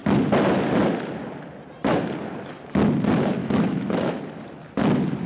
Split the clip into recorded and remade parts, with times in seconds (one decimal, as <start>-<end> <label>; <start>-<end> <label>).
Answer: 0.0-3.4 recorded; 3.4-4.1 remade; 4.1-5.3 recorded